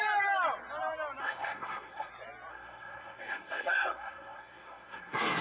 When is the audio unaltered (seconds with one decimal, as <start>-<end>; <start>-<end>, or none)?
0.0-1.2; 2.1-2.5